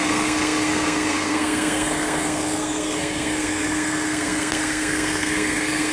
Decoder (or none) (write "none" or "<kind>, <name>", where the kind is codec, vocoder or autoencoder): codec, SNAC